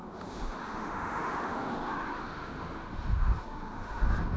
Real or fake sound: fake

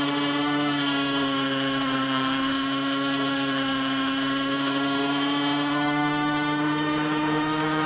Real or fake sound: fake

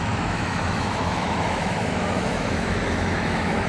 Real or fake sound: fake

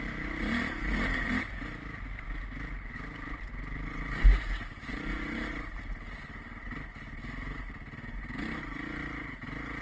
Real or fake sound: real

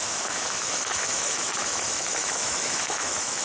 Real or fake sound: fake